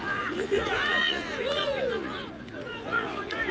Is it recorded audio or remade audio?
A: remade